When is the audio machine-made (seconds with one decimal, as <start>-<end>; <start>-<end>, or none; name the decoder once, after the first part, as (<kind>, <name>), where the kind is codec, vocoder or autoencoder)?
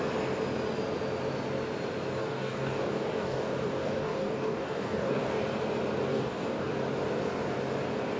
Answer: 2.2-5.4 (codec, DAC); 6.1-6.7